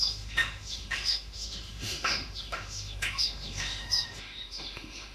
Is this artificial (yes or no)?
yes